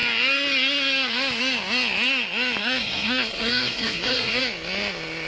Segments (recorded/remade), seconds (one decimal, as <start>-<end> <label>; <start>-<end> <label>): 0.0-2.6 recorded; 2.6-4.4 remade; 4.4-5.3 recorded